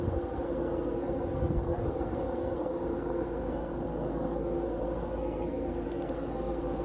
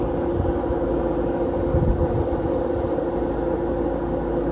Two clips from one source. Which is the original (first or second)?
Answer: second